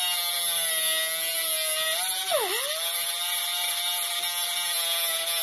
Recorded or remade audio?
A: recorded